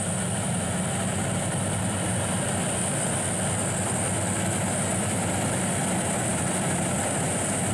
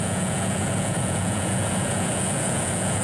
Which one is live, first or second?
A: first